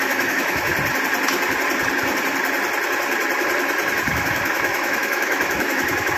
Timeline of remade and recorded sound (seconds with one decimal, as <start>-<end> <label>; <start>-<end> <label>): 0.0-0.7 remade; 0.7-4.1 recorded; 4.1-6.2 remade